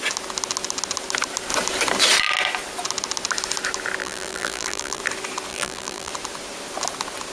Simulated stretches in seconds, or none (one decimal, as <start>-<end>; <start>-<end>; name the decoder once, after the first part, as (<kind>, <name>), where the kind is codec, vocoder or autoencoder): 4.0-5.0 (vocoder, BigVGAN v2); 5.5-6.1